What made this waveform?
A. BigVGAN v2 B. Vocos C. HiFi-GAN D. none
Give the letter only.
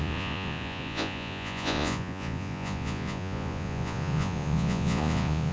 B